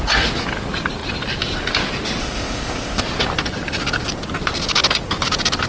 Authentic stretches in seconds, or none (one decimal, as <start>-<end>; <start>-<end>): 0.0-2.2; 3.0-5.7